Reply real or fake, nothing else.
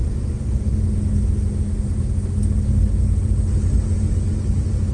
real